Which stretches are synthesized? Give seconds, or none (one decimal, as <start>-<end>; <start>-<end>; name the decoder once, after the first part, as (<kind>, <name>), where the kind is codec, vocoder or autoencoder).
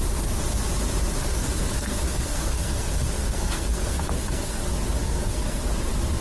1.2-4.6 (codec, SNAC); 5.0-5.6